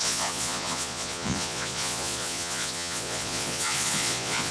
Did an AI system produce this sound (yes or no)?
yes